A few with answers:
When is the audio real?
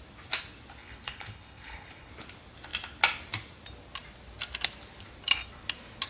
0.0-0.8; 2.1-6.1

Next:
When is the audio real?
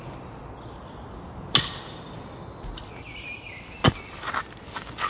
0.0-5.1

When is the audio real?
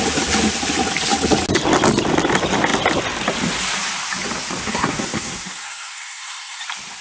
0.0-4.6; 6.6-7.0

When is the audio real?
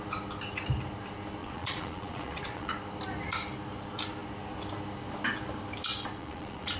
0.0-1.4; 2.7-6.2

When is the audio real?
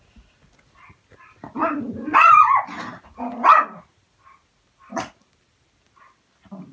0.0-6.7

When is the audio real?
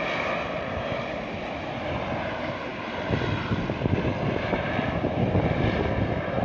0.0-6.4